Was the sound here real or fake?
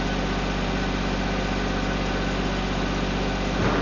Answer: real